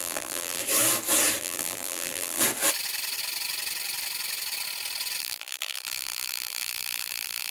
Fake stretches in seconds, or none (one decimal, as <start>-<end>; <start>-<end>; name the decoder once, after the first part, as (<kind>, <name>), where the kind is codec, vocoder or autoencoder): 0.0-0.6 (vocoder, BigVGAN v2); 1.4-2.4; 5.2-7.5